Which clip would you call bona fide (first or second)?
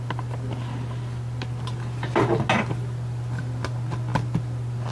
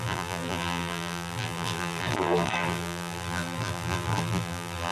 first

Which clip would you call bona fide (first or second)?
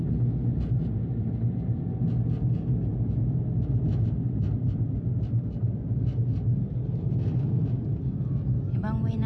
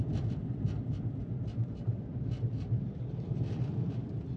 first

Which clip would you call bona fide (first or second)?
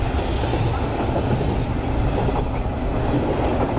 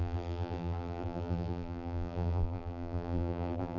first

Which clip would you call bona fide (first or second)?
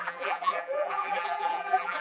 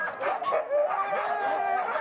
second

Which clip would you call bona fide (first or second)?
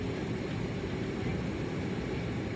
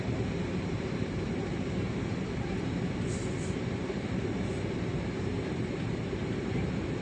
first